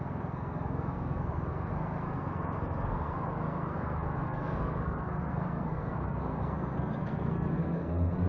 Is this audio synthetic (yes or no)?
yes